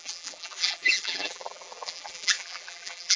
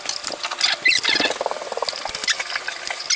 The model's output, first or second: first